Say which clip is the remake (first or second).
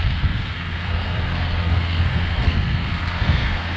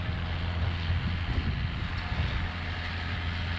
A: first